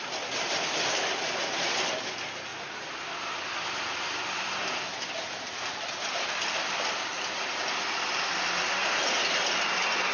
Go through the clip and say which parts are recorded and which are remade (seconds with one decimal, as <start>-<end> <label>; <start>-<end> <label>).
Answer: 0.0-10.1 recorded